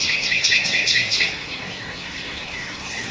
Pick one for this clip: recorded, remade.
remade